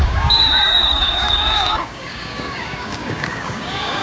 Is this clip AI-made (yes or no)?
yes